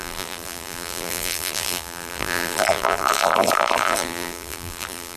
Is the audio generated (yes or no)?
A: yes